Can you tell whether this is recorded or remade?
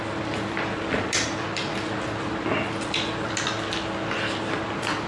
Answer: recorded